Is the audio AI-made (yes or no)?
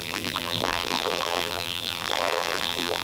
yes